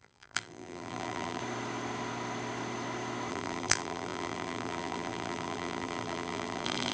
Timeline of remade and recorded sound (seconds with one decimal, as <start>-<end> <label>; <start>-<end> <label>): 0.0-1.4 remade; 1.4-3.3 recorded; 3.3-6.9 remade